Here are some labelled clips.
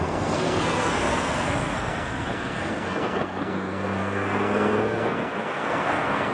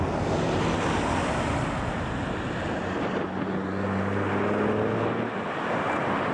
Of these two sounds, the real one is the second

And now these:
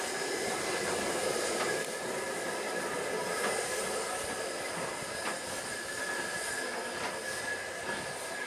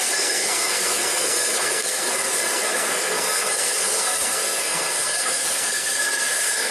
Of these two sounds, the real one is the first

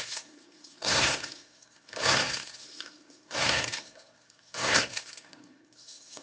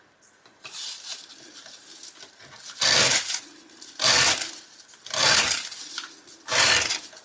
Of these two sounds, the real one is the second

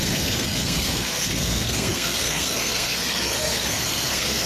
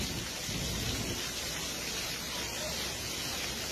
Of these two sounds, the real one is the second